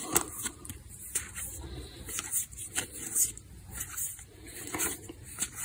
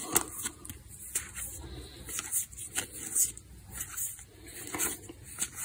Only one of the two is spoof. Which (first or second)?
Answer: first